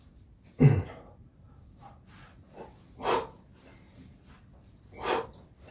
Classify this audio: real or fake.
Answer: real